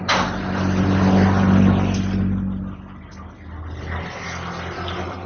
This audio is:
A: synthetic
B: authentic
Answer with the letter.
B